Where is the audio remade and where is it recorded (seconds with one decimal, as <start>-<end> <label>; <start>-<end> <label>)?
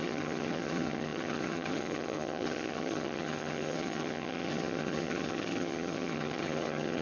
0.0-7.0 remade